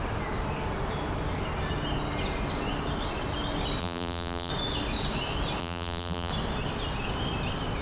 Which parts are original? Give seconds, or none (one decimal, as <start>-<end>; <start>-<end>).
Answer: 0.0-3.8; 4.5-5.6; 6.3-7.8